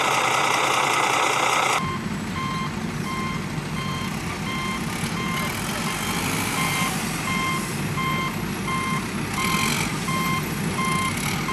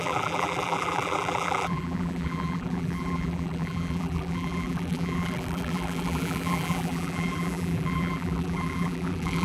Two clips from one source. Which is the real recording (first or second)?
first